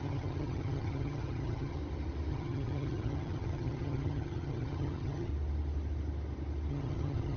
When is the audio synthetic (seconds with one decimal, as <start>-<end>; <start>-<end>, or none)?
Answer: 0.0-1.8; 2.3-5.3; 6.7-7.4